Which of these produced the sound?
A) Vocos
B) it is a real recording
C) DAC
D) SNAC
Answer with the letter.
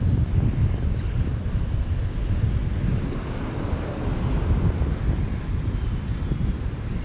B